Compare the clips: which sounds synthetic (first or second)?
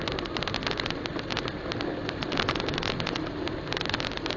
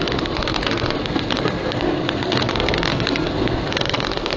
second